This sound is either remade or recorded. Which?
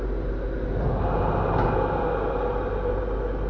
recorded